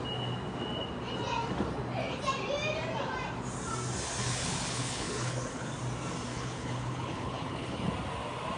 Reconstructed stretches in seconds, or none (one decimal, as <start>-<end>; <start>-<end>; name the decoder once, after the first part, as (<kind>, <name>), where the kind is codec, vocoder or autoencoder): 4.2-5.7 (codec, HILCodec); 6.3-7.9